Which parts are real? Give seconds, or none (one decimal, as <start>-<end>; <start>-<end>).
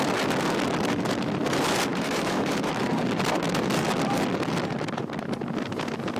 0.0-1.9; 2.8-6.2